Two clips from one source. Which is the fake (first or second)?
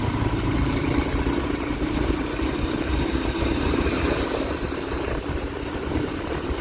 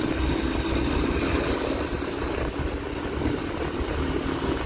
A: first